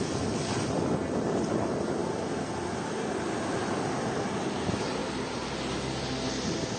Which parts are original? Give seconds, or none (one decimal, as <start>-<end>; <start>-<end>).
0.0-6.8